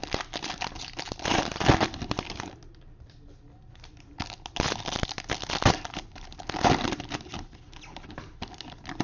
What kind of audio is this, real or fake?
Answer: real